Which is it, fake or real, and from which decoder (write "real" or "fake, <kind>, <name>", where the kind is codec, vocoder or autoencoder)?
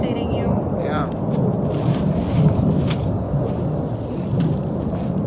real